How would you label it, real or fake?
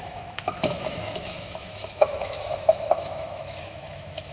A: fake